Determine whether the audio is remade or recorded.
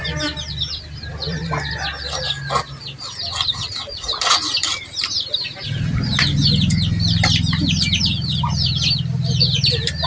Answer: recorded